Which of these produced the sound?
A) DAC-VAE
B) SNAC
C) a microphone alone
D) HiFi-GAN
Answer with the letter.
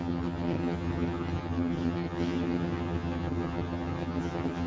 D